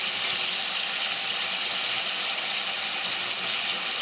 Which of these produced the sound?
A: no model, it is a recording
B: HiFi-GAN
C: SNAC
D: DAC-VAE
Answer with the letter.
A